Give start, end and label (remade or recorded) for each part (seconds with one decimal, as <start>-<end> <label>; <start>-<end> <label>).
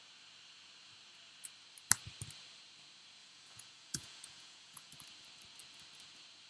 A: 0.0-3.2 recorded; 3.2-4.9 remade; 4.9-6.5 recorded